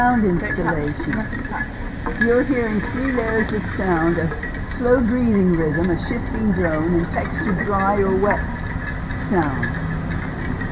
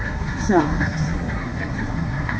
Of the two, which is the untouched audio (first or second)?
first